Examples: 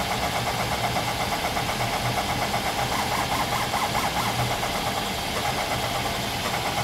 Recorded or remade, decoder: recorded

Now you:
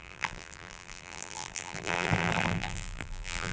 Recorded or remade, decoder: remade, vocoder, BigVGAN v2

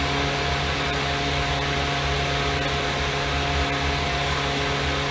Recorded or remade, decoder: recorded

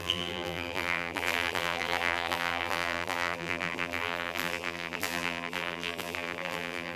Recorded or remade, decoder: remade, vocoder, BigVGAN v2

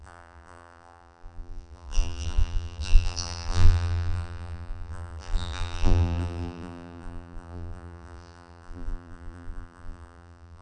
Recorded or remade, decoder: remade, vocoder, BigVGAN v2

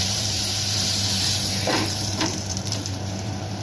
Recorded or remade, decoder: remade, vocoder, BigVGAN v2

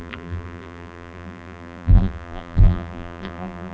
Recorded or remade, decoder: remade, vocoder, BigVGAN v2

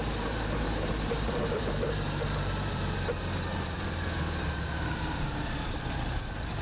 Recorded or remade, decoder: remade, vocoder, BigVGAN v2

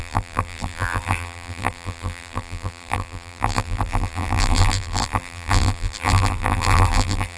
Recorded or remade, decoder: remade, vocoder, BigVGAN v2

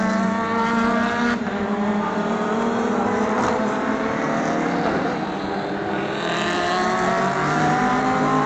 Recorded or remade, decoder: remade, vocoder, BigVGAN v2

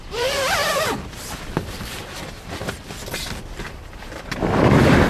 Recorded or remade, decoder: remade, vocoder, BigVGAN v2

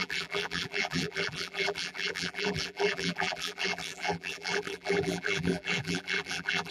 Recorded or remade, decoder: remade, vocoder, BigVGAN v2